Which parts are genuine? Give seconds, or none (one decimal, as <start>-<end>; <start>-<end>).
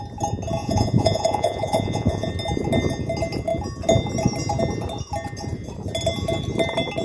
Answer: 0.0-0.6; 2.3-7.0